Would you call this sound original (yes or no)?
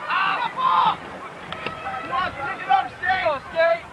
no